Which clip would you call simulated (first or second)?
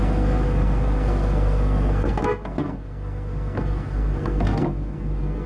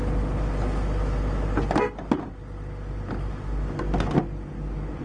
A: first